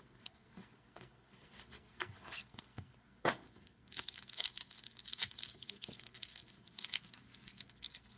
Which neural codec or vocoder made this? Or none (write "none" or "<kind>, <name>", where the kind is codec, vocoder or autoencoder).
codec, SNAC